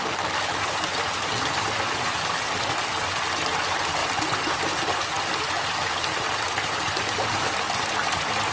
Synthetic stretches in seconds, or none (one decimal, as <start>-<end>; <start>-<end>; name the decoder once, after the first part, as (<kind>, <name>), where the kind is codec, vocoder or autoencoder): none